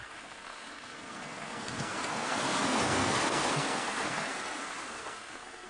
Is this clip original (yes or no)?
no